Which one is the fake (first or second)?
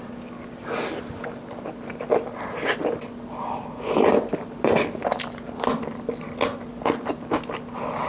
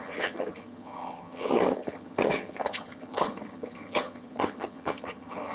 second